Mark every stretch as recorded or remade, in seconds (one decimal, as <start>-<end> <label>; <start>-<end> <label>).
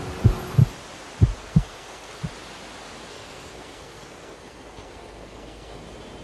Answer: 0.0-1.4 recorded; 1.4-2.2 remade; 2.2-3.1 recorded; 3.1-5.8 remade; 5.8-6.2 recorded